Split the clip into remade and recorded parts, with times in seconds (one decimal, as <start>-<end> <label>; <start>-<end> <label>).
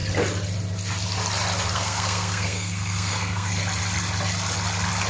0.0-1.7 recorded; 1.7-3.6 remade; 3.6-5.1 recorded